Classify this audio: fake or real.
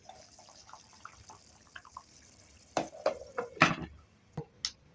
real